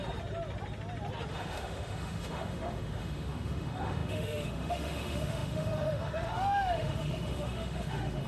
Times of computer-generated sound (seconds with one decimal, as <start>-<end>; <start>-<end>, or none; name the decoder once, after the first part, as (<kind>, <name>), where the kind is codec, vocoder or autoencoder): 1.3-8.3 (autoencoder, DAC-VAE)